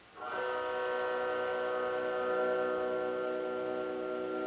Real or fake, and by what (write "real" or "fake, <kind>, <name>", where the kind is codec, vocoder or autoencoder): real